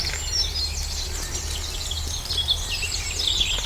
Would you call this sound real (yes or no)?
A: yes